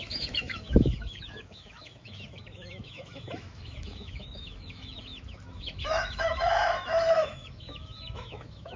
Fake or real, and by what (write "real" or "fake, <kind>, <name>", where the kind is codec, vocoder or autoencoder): fake, autoencoder, DAC-VAE